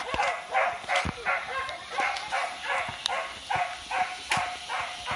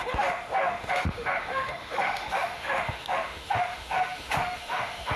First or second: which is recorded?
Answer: first